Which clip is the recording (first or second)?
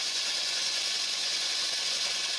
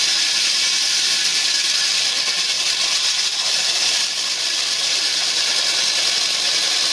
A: second